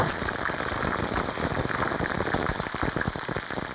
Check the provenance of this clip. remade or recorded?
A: recorded